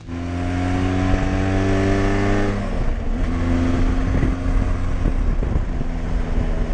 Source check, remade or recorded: recorded